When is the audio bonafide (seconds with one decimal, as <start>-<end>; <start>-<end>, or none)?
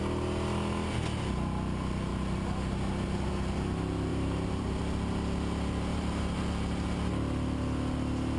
0.0-4.1; 4.8-5.9; 6.4-8.4